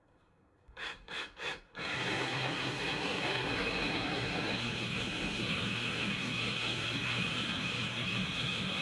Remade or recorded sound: remade